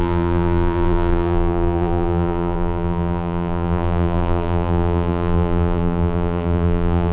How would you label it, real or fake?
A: fake